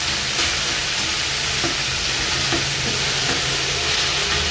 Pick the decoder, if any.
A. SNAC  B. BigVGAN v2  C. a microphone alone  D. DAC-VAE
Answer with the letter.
C